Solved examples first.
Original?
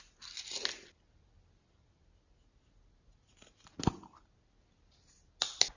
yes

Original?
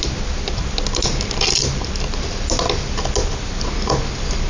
yes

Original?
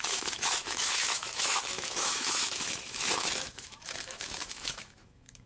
no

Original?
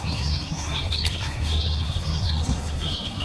no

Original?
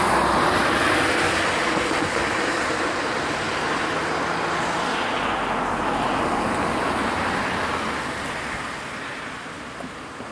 yes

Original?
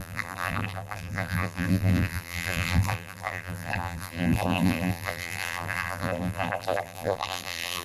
no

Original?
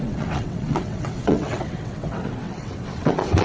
no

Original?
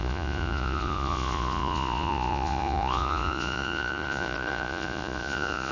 no